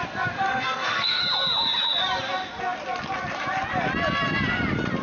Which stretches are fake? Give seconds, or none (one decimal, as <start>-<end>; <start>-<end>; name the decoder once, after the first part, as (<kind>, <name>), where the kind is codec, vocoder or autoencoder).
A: 0.5-1.2 (codec, SNAC)